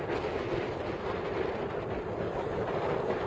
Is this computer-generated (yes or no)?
no